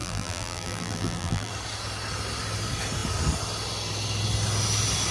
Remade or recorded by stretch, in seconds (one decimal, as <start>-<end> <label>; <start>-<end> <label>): 0.0-1.5 remade; 1.5-5.1 recorded